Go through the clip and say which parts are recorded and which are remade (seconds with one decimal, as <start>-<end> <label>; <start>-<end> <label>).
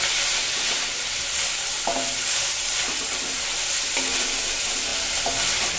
0.0-5.8 recorded